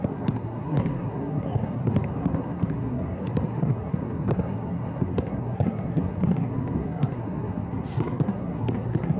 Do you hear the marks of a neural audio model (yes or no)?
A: yes